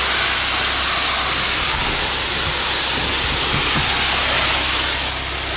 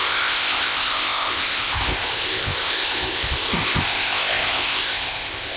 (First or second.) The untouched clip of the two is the first